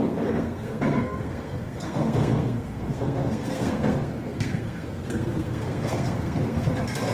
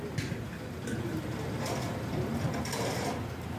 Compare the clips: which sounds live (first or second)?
second